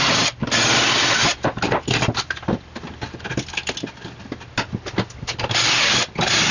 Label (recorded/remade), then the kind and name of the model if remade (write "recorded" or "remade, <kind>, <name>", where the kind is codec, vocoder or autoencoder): recorded